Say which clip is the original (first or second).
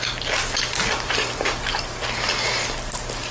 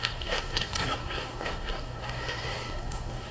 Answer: first